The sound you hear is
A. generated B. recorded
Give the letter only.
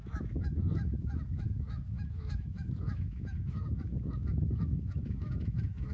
A